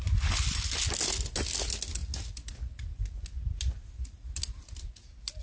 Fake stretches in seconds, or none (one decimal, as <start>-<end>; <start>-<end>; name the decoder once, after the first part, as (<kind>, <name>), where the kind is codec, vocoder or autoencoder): none